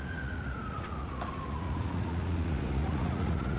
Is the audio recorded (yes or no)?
no